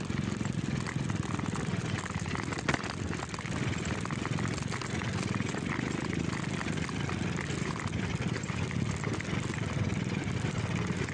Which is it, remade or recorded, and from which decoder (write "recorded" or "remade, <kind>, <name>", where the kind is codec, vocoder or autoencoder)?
recorded